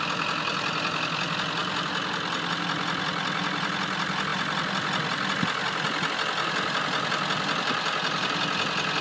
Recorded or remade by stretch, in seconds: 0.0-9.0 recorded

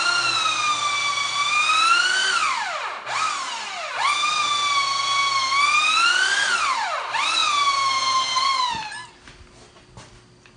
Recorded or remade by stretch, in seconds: 0.0-10.6 recorded

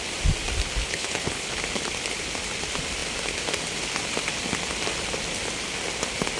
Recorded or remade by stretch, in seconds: 0.0-0.8 recorded; 0.8-1.6 remade; 1.6-6.4 recorded